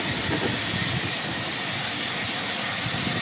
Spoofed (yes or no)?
no